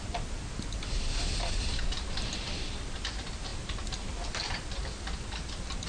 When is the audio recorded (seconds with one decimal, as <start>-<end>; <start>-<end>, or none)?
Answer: 0.0-5.9